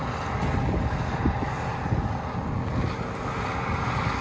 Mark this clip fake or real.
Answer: real